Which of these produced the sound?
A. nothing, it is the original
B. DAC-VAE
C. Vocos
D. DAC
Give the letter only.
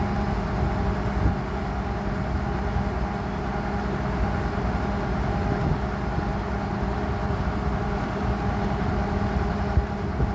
A